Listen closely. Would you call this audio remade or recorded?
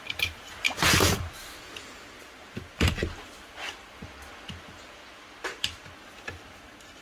recorded